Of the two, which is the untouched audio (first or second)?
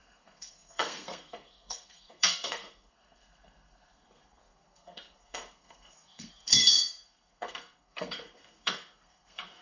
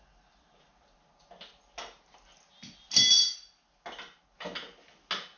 second